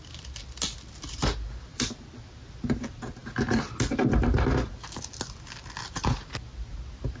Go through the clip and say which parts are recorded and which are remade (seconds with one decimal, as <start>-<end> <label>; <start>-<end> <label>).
0.0-7.2 recorded